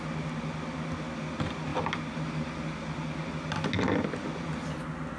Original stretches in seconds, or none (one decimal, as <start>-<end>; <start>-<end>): 0.0-5.2